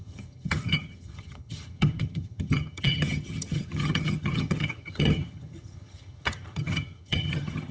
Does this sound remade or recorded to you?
remade